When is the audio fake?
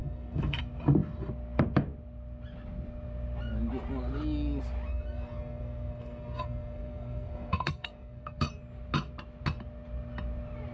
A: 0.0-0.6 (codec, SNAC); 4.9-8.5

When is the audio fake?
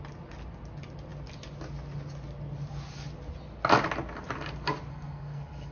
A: 4.9-5.7 (codec, SNAC)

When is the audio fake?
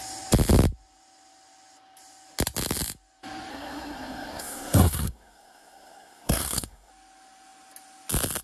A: 3.5-6.9 (codec, SNAC)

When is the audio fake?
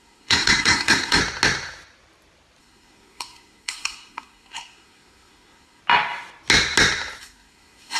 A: 0.0-1.2 (codec, SNAC); 2.6-5.8; 7.2-8.0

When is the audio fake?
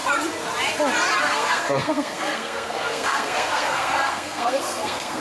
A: 1.2-5.2 (codec, SNAC)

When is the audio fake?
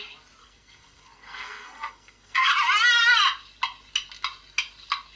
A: 0.4-2.5 (codec, SNAC)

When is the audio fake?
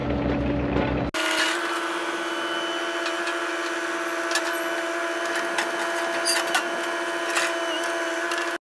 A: none